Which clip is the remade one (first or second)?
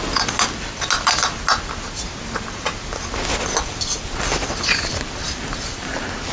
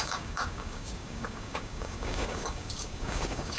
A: second